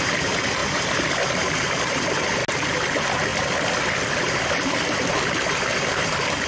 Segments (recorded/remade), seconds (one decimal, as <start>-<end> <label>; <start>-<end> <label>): 0.0-6.5 recorded